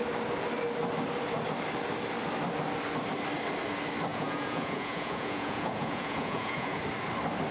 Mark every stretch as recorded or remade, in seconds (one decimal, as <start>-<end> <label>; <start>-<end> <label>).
0.0-4.1 recorded; 4.1-6.8 remade; 6.8-7.5 recorded